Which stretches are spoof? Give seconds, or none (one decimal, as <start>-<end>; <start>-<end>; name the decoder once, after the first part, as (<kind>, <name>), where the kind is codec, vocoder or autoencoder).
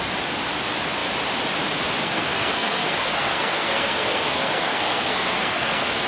2.0-6.1 (codec, SNAC)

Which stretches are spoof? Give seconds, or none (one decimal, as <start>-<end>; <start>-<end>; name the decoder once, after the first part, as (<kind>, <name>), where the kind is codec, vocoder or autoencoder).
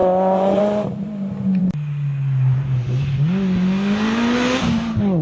0.0-0.6 (vocoder, Vocos)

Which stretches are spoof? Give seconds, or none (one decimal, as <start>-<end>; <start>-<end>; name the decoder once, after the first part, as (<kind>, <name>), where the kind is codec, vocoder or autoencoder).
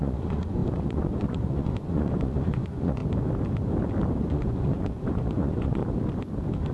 0.0-3.0 (vocoder, Vocos); 4.2-5.8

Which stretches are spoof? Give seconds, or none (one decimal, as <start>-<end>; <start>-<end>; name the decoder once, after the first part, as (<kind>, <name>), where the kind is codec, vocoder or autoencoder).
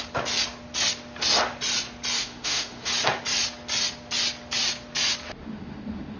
2.2-2.9 (autoencoder, DAC-VAE); 5.4-6.2